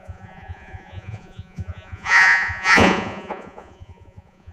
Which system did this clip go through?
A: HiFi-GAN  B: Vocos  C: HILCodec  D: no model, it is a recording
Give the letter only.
B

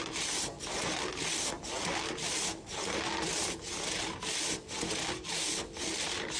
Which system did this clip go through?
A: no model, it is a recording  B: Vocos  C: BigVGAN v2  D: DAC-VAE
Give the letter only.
A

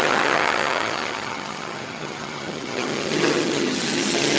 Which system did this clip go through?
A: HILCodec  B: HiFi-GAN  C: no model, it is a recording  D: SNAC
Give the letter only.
B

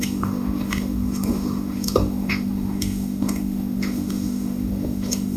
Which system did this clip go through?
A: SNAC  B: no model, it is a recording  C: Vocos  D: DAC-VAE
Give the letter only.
D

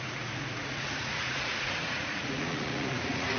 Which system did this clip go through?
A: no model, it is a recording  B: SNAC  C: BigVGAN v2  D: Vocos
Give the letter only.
D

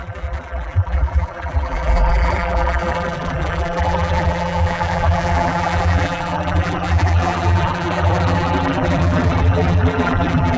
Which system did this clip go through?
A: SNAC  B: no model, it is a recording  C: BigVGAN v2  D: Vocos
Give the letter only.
C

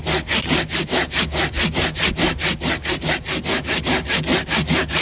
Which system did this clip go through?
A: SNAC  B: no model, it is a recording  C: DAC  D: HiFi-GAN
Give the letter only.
B